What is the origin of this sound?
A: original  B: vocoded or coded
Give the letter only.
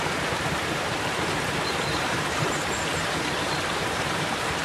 B